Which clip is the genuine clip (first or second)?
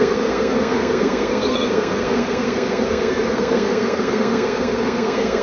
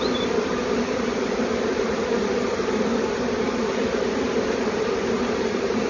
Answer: second